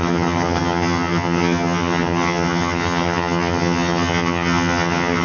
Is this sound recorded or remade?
remade